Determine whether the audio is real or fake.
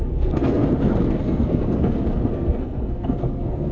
fake